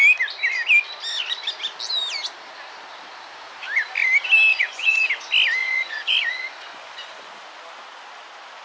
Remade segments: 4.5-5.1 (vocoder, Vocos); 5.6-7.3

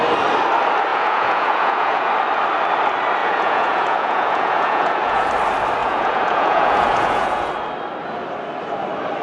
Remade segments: 0.9-2.1 (vocoder, Vocos); 3.2-5.3; 5.8-7.5

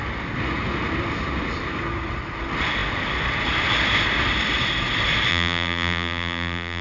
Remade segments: 5.3-6.8 (vocoder, BigVGAN v2)

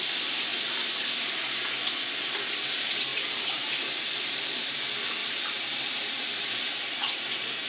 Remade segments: 3.1-4.8 (vocoder, BigVGAN v2); 5.2-6.6

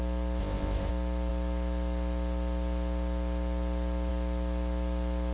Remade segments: 0.4-0.9 (codec, ZipCodec)